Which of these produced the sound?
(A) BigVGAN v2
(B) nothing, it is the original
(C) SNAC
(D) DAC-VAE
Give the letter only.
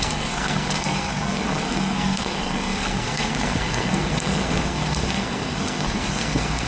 C